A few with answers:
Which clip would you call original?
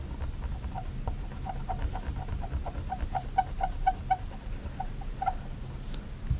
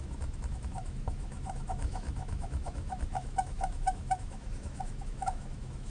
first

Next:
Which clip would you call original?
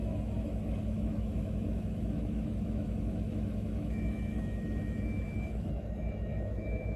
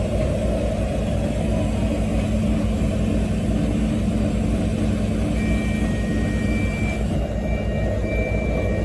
second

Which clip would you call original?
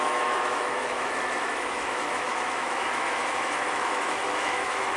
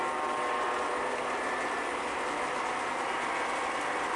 second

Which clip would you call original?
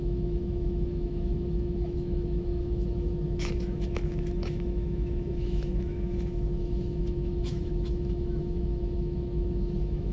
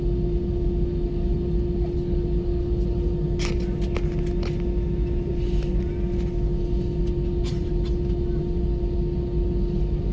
second